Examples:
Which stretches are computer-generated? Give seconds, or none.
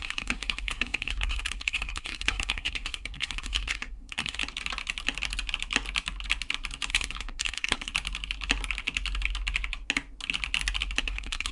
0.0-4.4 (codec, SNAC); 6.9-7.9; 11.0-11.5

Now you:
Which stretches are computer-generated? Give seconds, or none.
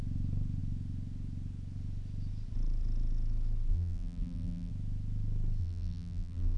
3.7-4.7 (vocoder, BigVGAN v2); 5.6-6.6